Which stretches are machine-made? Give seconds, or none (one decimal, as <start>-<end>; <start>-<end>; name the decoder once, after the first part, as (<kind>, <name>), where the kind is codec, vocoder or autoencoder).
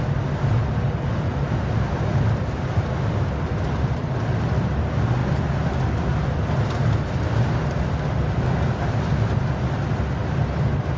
2.1-4.8 (vocoder, BigVGAN v2)